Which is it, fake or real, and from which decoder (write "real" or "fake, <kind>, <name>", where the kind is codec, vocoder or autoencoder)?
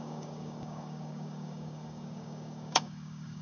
fake, codec, DAC